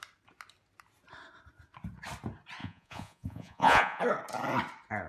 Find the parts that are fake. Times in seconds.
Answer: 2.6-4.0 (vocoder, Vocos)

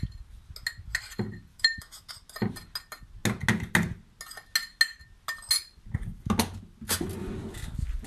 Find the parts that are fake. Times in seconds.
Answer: 1.5-2.1 (autoencoder, DAC-VAE)